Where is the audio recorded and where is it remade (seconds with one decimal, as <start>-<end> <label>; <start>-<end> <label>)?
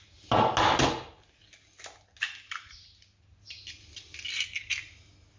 0.0-5.4 recorded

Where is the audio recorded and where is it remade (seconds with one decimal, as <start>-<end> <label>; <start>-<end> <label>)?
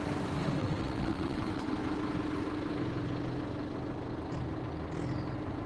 0.0-0.6 recorded; 0.6-1.6 remade; 1.6-5.7 recorded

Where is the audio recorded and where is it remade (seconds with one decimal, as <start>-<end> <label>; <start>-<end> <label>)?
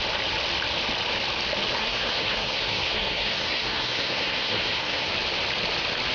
0.0-1.8 recorded; 1.8-5.1 remade; 5.1-6.1 recorded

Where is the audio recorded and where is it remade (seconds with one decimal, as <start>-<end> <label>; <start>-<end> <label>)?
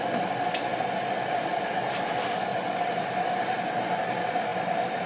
0.0-5.1 recorded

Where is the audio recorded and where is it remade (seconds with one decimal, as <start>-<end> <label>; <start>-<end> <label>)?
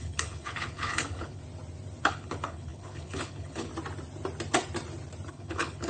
0.0-1.4 remade; 1.4-2.0 recorded; 2.0-3.7 remade; 3.7-5.3 recorded; 5.3-5.9 remade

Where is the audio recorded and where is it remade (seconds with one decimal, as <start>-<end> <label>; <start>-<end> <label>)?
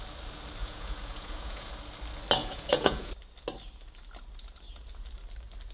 0.0-0.6 recorded; 0.6-1.7 remade; 1.7-2.4 recorded; 2.4-3.1 remade; 3.1-5.7 recorded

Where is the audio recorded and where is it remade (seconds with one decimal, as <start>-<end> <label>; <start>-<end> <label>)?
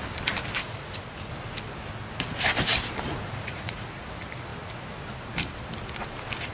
0.0-0.6 recorded; 0.6-1.3 remade; 1.3-3.1 recorded; 3.1-4.1 remade; 4.1-6.5 recorded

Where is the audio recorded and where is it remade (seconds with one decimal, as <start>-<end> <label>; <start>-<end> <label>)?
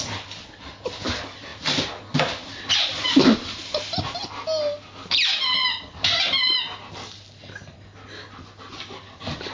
0.0-9.5 recorded